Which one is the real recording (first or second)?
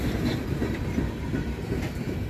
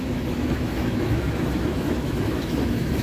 first